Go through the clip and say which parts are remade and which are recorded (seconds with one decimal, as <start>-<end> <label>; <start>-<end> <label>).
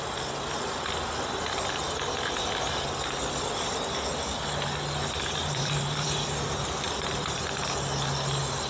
0.0-5.4 recorded; 5.4-7.4 remade; 7.4-8.7 recorded